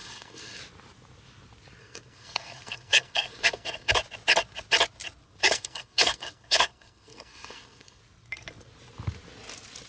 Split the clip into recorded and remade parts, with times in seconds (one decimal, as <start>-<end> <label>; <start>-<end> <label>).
0.0-0.6 remade; 0.6-1.8 recorded; 1.8-3.9 remade; 3.9-5.4 recorded; 5.4-8.0 remade; 8.0-9.9 recorded